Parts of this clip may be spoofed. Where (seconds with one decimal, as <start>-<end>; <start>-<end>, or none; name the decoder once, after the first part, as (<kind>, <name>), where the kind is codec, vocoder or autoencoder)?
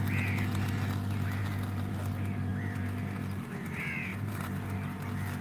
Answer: none